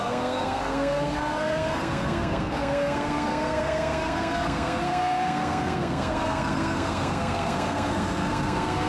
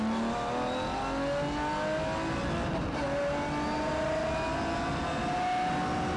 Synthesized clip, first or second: first